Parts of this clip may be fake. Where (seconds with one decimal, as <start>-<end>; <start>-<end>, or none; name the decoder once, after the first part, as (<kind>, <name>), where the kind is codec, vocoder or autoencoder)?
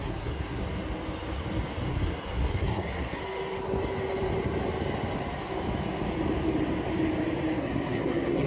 0.0-0.6 (codec, SNAC); 1.9-3.2; 7.6-8.5